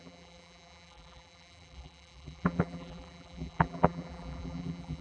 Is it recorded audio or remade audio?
remade